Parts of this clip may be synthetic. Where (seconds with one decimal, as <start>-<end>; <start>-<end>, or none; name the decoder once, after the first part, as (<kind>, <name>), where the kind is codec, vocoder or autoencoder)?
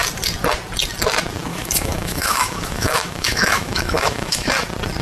1.5-4.5 (autoencoder, DAC-VAE)